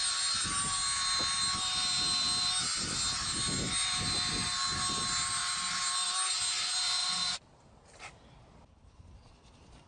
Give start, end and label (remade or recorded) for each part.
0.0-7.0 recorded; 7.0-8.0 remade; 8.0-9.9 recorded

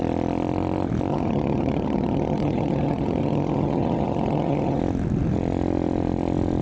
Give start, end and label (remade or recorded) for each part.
0.0-1.1 recorded; 1.1-4.8 remade; 4.8-6.6 recorded

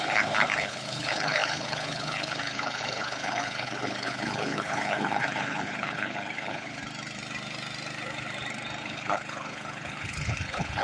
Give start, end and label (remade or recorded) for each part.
0.0-6.8 remade; 6.8-8.8 recorded; 8.8-10.8 remade

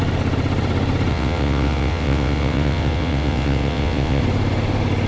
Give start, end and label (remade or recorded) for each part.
0.0-1.1 recorded; 1.1-4.2 remade; 4.2-5.1 recorded

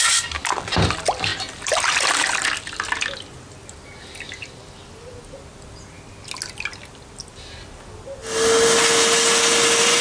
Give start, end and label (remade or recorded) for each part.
0.0-10.0 recorded

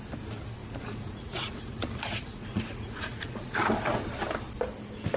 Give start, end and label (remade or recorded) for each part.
0.0-0.6 recorded; 0.6-3.7 remade; 3.7-5.2 recorded

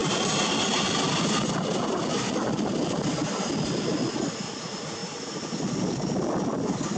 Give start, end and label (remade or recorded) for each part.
0.0-7.0 recorded

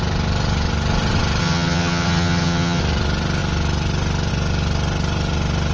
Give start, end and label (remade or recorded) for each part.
0.0-1.4 recorded; 1.4-2.8 remade; 2.8-5.7 recorded